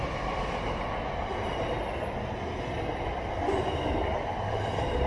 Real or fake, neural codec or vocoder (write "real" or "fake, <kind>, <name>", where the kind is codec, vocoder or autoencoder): real